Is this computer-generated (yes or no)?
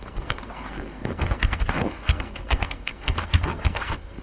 yes